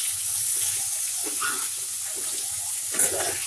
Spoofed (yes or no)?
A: yes